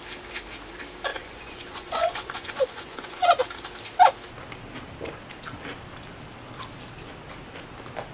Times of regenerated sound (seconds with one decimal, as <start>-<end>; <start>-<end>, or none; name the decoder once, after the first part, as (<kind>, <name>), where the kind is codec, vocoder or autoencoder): 1.1-3.4 (vocoder, Vocos)